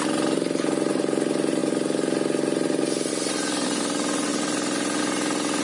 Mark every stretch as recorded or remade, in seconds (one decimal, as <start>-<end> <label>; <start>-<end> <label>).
0.0-5.6 recorded